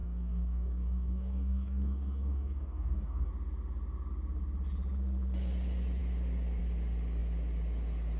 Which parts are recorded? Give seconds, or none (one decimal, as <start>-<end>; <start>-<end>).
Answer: 3.3-8.2